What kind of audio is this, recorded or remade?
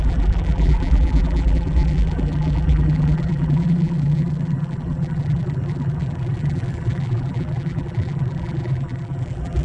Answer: remade